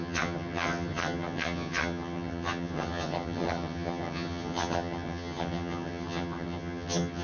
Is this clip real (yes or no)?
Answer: no